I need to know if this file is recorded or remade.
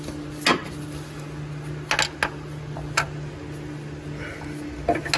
recorded